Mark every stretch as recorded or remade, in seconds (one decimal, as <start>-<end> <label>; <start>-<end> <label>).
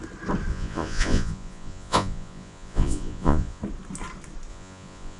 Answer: 0.0-0.5 recorded; 0.5-3.6 remade; 3.6-4.5 recorded; 4.5-5.2 remade